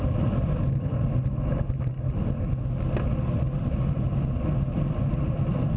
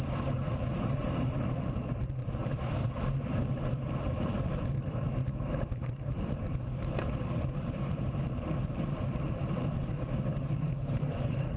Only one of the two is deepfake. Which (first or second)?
second